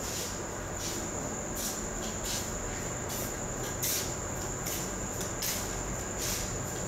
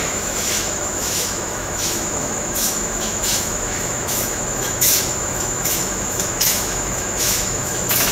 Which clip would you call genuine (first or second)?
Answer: first